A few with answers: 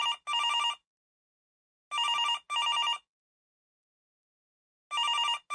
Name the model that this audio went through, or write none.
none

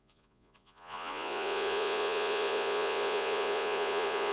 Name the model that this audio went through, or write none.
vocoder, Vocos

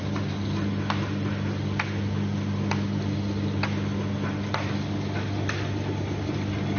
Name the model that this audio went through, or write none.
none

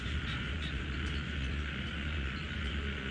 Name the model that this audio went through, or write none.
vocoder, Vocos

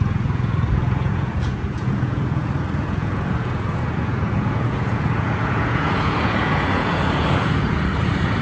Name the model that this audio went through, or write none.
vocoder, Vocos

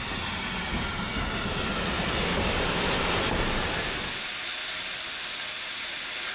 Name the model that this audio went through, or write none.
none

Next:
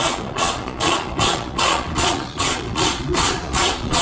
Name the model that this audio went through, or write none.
vocoder, Vocos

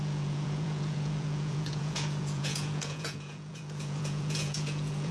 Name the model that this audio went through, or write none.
vocoder, Vocos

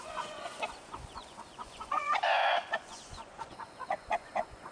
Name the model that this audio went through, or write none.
vocoder, Vocos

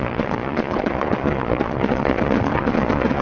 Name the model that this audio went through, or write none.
vocoder, Vocos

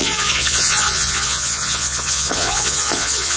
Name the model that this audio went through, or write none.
vocoder, Vocos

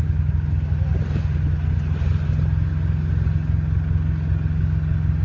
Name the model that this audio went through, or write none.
none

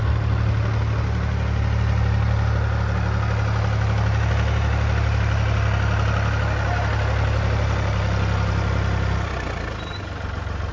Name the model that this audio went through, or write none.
none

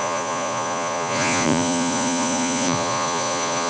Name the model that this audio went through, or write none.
vocoder, Vocos